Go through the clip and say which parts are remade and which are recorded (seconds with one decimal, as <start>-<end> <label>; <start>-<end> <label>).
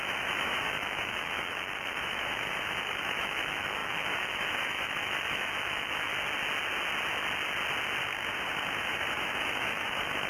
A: 0.0-6.1 remade; 6.1-8.8 recorded; 8.8-10.3 remade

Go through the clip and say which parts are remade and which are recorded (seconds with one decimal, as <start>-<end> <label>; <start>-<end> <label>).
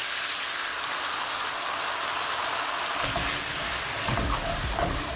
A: 0.0-5.2 recorded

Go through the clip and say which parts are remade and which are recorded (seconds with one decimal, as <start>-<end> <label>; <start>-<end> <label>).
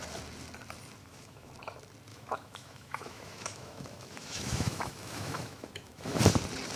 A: 0.0-1.0 recorded; 1.0-1.5 remade; 1.5-2.1 recorded; 2.1-6.2 remade; 6.2-6.8 recorded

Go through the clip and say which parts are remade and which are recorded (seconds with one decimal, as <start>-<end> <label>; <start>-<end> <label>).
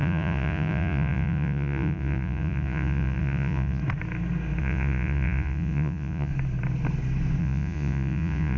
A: 0.0-3.8 remade; 3.8-4.6 recorded; 4.6-6.3 remade; 6.3-7.4 recorded; 7.4-8.6 remade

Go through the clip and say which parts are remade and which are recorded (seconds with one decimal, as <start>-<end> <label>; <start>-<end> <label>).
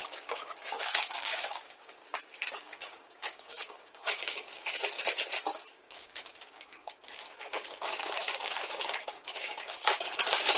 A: 0.0-2.0 remade; 2.0-2.5 recorded; 2.5-4.8 remade; 4.8-5.8 recorded; 5.8-10.6 remade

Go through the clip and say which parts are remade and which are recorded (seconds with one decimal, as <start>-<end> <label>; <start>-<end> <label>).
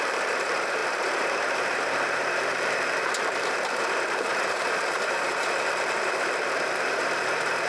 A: 0.0-7.7 remade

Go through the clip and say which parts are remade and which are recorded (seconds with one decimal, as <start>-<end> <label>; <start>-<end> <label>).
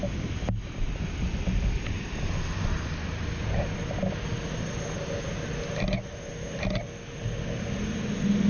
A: 0.0-8.5 recorded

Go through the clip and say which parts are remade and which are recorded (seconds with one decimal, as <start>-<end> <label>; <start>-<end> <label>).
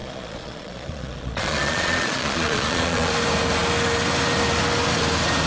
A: 0.0-3.1 remade; 3.1-5.5 recorded